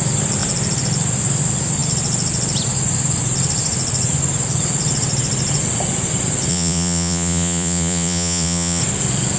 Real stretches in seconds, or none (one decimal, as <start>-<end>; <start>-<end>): 0.0-6.5; 8.8-9.4